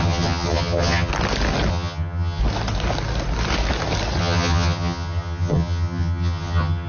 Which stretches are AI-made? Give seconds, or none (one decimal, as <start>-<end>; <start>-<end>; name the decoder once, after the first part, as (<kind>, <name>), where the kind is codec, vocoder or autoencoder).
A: 0.0-1.1 (vocoder, HiFi-GAN); 1.7-2.4; 4.2-6.9